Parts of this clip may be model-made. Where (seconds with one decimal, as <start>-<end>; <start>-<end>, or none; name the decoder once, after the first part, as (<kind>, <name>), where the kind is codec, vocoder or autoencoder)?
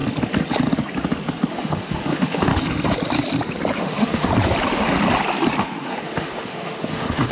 1.5-2.5 (autoencoder, DAC-VAE); 3.8-4.3; 5.6-7.3